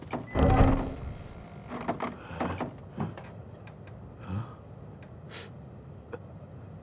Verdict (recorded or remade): recorded